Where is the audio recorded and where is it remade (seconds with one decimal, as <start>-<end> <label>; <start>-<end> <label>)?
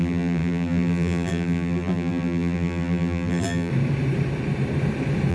0.0-3.7 remade; 3.7-5.3 recorded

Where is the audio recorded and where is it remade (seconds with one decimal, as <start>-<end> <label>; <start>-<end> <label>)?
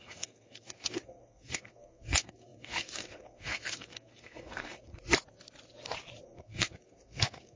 0.0-4.9 remade; 4.9-6.2 recorded; 6.2-7.6 remade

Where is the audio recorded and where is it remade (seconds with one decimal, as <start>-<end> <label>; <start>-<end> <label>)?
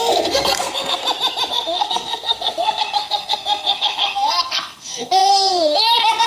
0.0-1.0 remade; 1.0-1.5 recorded; 1.5-6.3 remade